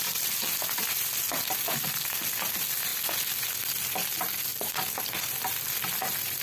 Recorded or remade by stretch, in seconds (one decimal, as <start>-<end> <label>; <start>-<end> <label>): 0.0-6.4 recorded